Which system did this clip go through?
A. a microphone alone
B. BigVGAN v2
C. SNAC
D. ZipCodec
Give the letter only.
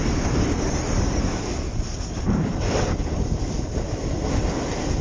A